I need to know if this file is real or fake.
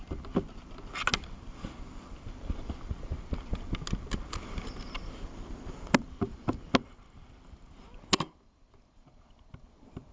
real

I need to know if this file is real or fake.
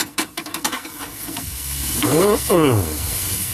fake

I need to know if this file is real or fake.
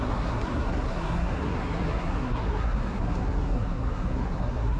fake